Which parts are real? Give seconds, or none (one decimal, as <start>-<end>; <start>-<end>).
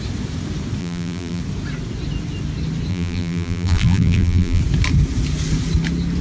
0.0-0.8; 1.4-2.9; 4.6-6.2